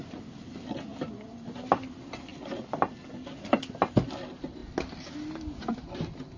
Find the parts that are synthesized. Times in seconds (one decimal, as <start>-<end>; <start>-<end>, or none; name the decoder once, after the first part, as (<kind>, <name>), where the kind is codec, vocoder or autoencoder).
none